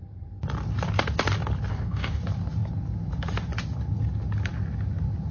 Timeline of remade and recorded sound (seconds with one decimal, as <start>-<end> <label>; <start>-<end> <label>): 0.0-1.7 recorded; 1.7-2.2 remade; 2.2-5.3 recorded